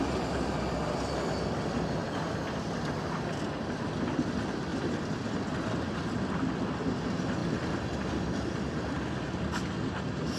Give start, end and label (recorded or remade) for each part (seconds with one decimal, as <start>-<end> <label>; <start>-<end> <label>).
0.0-2.0 recorded; 2.0-3.1 remade; 3.1-4.7 recorded; 4.7-5.4 remade; 5.4-10.4 recorded